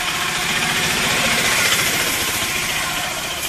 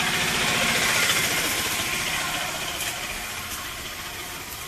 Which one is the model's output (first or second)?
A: first